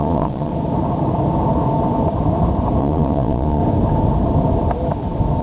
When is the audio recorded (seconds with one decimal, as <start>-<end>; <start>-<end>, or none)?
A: 0.5-2.8; 3.6-5.4